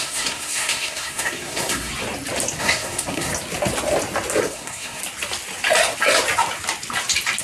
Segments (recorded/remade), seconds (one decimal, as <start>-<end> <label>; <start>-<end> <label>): 0.0-1.9 remade; 1.9-2.6 recorded; 2.6-3.3 remade; 3.3-4.4 recorded; 4.4-5.0 remade; 5.0-7.4 recorded